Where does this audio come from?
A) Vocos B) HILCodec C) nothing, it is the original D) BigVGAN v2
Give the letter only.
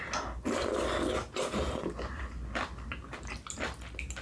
C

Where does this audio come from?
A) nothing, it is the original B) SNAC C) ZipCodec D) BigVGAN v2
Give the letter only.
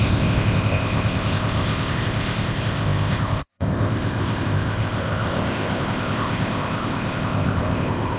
C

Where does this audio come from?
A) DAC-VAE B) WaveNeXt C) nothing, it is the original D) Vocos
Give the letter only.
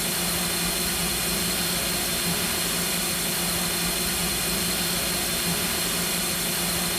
C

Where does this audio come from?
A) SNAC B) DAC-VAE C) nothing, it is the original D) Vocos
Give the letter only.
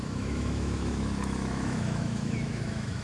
B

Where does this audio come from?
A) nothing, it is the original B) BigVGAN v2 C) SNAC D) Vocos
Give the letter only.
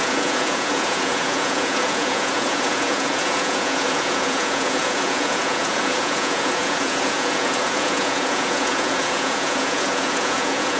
D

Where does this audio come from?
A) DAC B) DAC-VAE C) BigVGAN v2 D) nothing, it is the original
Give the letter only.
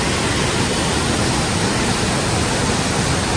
D